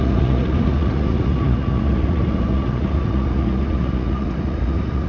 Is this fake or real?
fake